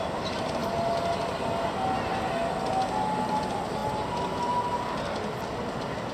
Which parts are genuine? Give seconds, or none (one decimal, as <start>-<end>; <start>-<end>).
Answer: 0.0-6.1